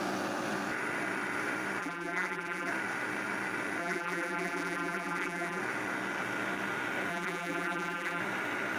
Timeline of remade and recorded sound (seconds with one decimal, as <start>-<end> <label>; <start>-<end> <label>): 0.0-1.8 recorded; 1.8-2.7 remade; 2.7-3.8 recorded; 3.8-5.6 remade; 5.6-7.1 recorded; 7.1-8.2 remade; 8.2-8.8 recorded